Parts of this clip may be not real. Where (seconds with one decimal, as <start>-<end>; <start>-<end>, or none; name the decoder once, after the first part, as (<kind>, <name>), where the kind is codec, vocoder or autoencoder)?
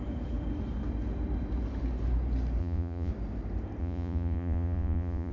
2.6-3.1 (vocoder, Vocos); 3.8-5.3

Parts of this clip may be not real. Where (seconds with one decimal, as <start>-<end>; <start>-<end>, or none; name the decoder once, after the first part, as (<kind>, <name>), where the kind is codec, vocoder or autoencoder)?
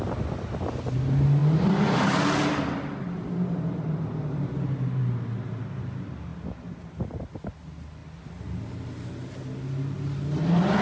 none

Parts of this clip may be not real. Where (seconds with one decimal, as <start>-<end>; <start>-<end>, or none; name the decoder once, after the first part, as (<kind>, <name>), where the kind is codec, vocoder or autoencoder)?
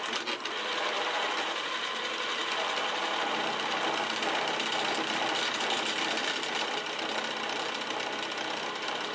none